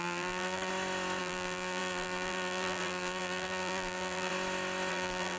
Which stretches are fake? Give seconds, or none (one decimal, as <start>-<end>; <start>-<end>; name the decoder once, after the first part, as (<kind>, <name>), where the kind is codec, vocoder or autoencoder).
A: 0.0-0.7 (vocoder, BigVGAN v2); 1.2-4.3; 4.9-5.4